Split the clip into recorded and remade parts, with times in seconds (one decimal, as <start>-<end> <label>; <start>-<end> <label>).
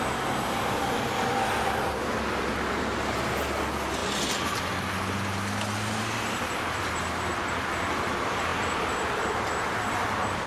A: 0.0-10.5 recorded